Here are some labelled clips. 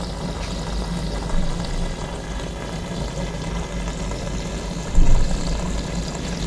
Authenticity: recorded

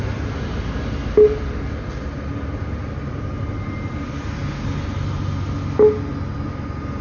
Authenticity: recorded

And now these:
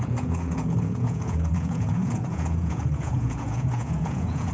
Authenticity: remade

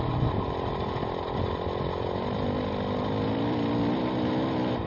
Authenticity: recorded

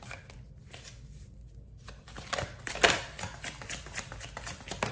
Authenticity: recorded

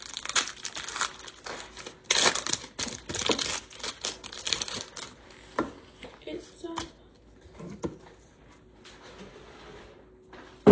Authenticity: recorded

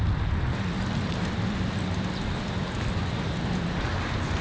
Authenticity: recorded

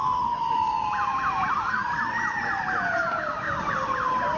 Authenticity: remade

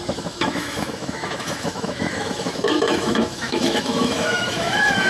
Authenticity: remade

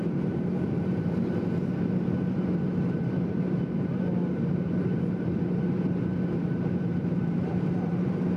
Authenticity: remade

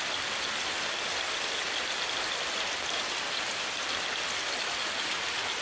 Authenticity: recorded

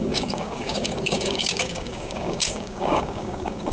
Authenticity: remade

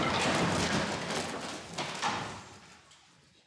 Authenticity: recorded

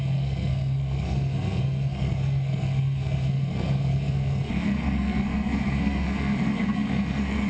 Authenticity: remade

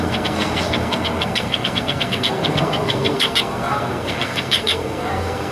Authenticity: remade